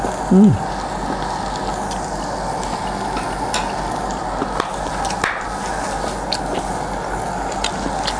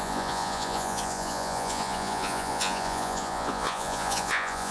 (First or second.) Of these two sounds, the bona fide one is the first